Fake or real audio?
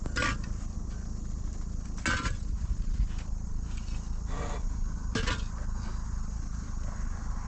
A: real